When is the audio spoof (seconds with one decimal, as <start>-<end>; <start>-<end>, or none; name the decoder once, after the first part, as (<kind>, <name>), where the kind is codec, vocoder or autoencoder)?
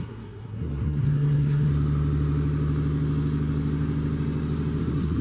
0.0-1.7 (codec, SNAC); 4.8-5.2